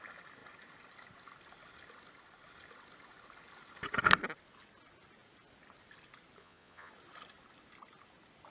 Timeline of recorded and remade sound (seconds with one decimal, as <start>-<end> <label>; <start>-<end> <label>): 0.0-6.4 recorded; 6.4-6.9 remade; 6.9-8.5 recorded